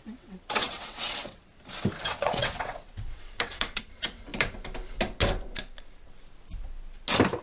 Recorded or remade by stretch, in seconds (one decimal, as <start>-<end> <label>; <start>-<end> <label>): 0.0-1.4 remade; 1.4-2.0 recorded; 2.0-4.3 remade; 4.3-7.4 recorded